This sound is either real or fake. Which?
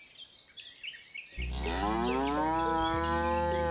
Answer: real